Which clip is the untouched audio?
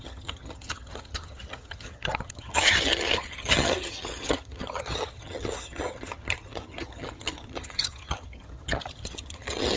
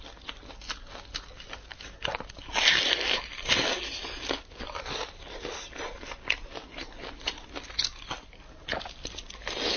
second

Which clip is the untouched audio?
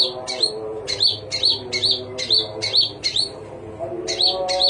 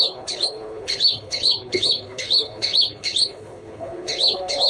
first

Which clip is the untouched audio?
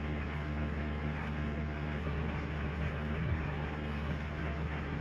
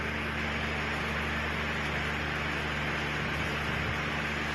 second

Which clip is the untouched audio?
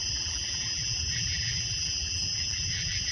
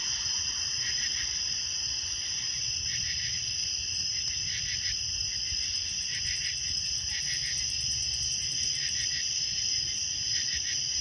second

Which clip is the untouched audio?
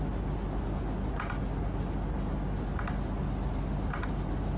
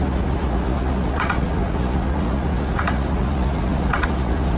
first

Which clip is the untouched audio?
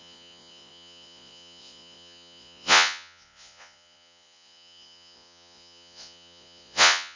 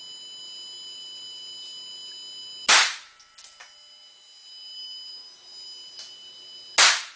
second